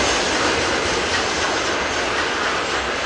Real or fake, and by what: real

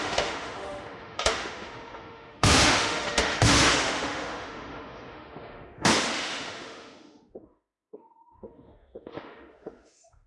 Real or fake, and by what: fake, autoencoder, DAC-VAE